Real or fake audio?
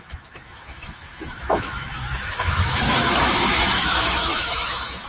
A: fake